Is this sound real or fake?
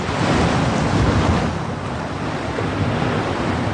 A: real